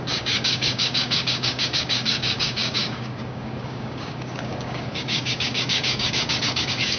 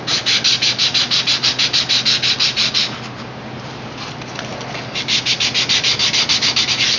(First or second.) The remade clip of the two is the first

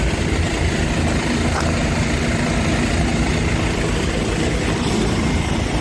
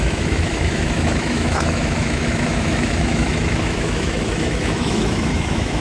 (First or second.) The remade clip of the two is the second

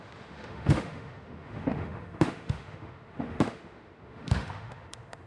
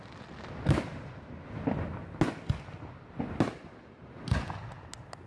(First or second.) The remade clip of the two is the first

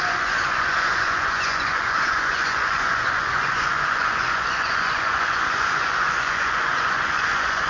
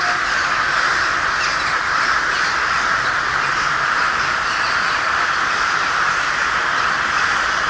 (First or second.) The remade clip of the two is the first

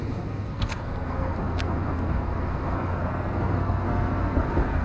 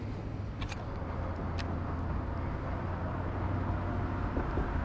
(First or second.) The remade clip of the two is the first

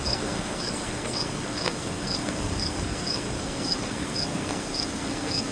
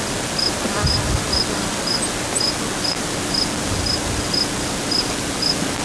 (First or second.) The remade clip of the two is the first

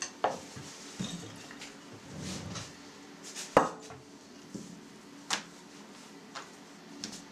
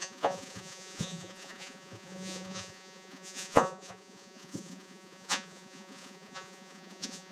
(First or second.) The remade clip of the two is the second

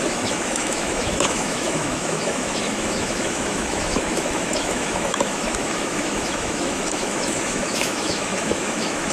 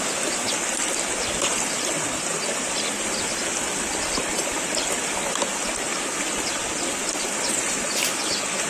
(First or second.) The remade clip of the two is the first